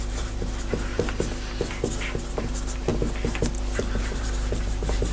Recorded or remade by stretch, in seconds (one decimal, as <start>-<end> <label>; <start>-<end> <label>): 0.0-0.9 remade; 0.9-2.2 recorded; 2.2-2.9 remade; 2.9-3.8 recorded; 3.8-5.1 remade